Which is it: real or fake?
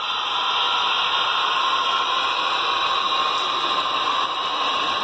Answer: real